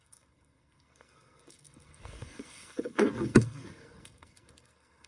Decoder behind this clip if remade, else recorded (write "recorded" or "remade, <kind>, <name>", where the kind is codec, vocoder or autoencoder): remade, codec, SNAC